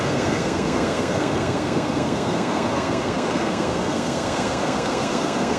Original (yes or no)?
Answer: no